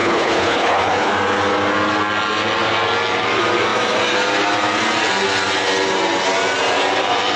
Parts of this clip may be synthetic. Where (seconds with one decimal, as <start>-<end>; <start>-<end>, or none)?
0.0-1.1